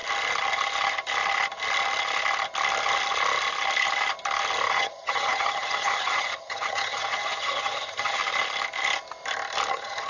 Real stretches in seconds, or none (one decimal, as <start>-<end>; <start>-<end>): 0.0-4.7; 8.2-9.7